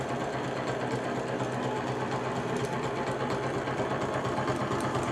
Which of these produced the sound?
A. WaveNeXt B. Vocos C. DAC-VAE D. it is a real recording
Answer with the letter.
D